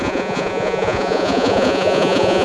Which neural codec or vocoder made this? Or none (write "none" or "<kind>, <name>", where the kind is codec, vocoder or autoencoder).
vocoder, Vocos